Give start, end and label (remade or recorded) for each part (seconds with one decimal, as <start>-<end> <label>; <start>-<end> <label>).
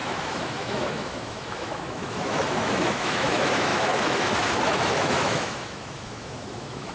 0.0-6.9 remade